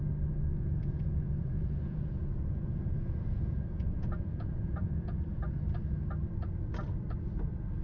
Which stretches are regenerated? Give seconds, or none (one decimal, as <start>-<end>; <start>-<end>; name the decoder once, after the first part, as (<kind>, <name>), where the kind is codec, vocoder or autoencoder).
0.5-5.2 (vocoder, Vocos)